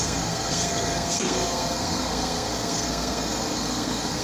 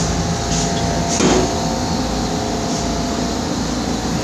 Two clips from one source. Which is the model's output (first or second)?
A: first